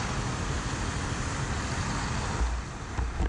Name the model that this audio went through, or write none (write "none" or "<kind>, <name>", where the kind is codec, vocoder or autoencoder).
none